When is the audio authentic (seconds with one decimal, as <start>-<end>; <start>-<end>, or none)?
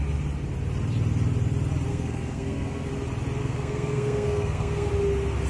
0.0-1.9; 2.9-3.4; 4.9-5.5